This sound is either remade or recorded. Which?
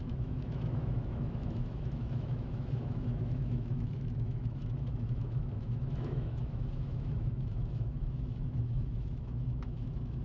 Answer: remade